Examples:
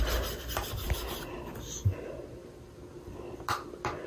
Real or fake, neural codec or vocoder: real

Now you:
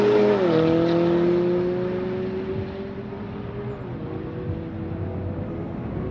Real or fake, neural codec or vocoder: real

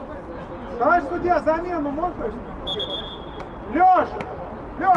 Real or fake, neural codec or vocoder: real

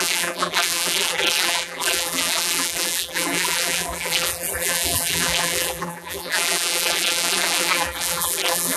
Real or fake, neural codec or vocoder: fake, vocoder, BigVGAN v2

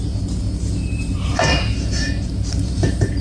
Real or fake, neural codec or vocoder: fake, vocoder, BigVGAN v2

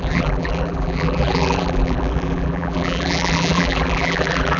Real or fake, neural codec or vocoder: fake, vocoder, BigVGAN v2